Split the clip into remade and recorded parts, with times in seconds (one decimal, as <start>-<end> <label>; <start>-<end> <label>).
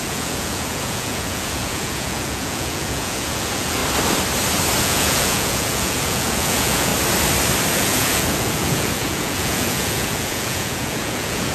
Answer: 0.0-3.8 remade; 3.8-4.8 recorded; 4.8-6.9 remade; 6.9-7.7 recorded; 7.7-11.5 remade